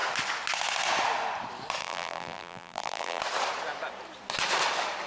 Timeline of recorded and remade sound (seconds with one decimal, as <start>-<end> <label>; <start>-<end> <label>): 0.0-1.8 recorded; 1.8-3.2 remade; 3.2-5.1 recorded